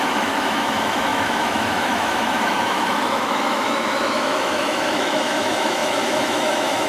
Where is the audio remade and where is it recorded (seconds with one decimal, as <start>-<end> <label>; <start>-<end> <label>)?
0.0-6.9 remade